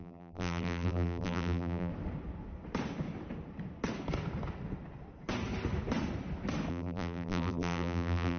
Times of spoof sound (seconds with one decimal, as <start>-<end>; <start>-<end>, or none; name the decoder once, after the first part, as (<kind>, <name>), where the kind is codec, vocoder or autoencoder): 0.0-1.9 (vocoder, BigVGAN v2); 6.7-8.4